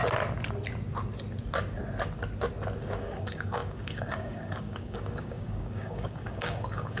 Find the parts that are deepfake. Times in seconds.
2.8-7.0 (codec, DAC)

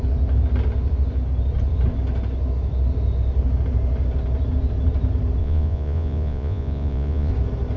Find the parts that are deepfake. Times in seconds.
5.4-7.3 (vocoder, Vocos)

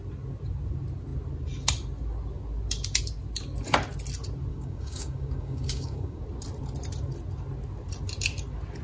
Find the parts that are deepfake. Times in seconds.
4.5-6.2 (codec, DAC)

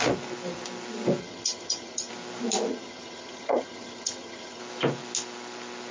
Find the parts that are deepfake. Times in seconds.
1.2-2.1 (vocoder, HiFi-GAN); 2.7-4.6

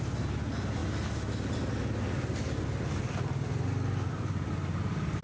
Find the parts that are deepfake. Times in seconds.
none